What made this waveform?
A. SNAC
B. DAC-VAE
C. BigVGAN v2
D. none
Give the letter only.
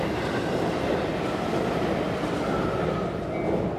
D